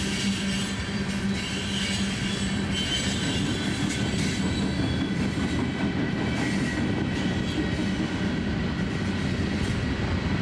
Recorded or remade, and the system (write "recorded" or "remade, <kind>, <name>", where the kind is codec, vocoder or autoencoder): recorded